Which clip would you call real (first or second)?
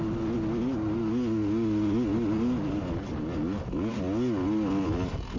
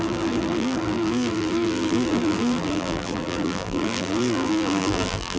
first